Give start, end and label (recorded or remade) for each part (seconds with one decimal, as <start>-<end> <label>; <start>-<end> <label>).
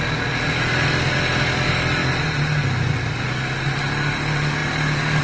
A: 0.0-5.2 recorded